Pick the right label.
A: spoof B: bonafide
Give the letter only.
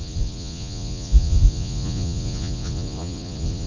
A